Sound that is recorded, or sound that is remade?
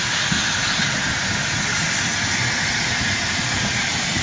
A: recorded